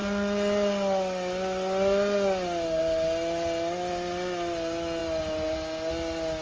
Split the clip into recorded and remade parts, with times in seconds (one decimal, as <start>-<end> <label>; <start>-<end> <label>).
0.0-6.4 recorded